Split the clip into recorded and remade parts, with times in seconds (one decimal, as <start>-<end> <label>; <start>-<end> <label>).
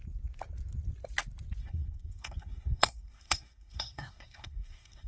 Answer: 0.0-1.6 recorded; 1.6-5.1 remade